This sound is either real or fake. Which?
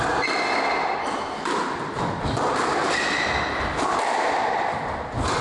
real